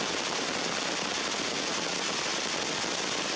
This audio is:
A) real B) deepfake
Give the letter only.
A